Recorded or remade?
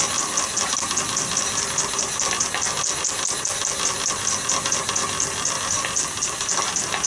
recorded